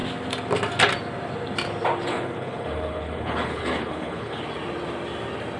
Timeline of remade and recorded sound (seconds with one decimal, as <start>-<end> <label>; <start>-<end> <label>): 0.0-2.1 recorded; 2.1-4.4 remade; 4.4-5.6 recorded